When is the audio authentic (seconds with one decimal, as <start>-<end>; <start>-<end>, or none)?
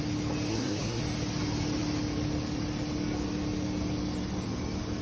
0.0-0.5; 1.0-5.0